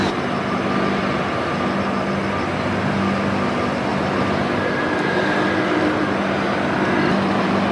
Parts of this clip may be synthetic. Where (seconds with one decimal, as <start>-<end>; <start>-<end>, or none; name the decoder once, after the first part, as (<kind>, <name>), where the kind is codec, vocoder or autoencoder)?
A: none